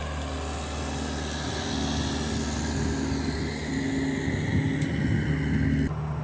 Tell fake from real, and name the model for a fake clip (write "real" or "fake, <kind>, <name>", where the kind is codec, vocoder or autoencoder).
real